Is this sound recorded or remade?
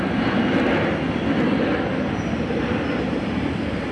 recorded